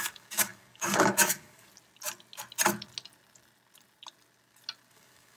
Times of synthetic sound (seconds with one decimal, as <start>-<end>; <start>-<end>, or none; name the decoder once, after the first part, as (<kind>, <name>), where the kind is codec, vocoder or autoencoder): 0.0-1.7 (codec, DAC); 4.9-5.4